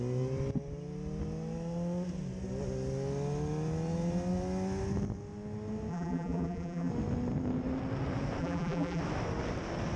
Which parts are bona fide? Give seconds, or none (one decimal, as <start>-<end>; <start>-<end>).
0.0-5.9; 6.9-8.4; 9.0-10.0